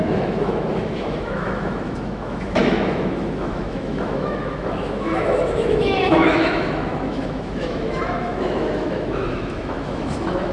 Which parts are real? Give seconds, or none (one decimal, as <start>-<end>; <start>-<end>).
none